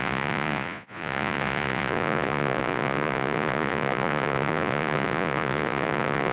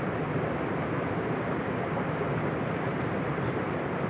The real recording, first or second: second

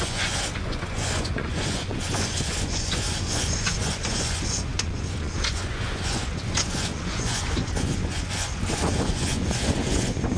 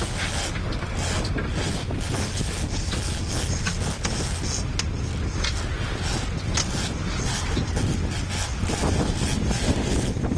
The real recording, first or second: second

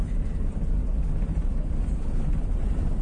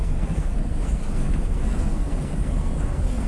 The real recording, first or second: first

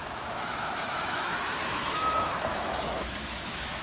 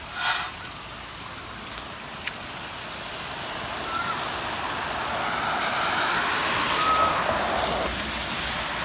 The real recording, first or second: second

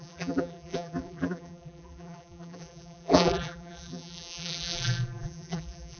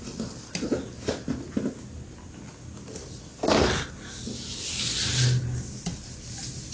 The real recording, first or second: second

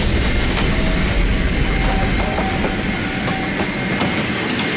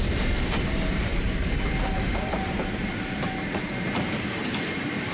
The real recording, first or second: first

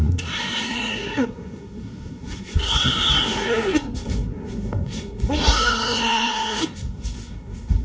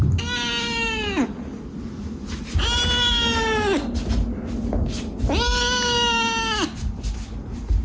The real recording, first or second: second